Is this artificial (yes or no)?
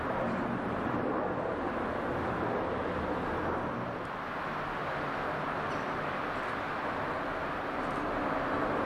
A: no